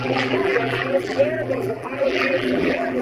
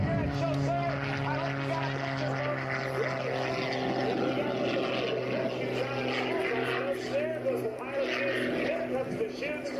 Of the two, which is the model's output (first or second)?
first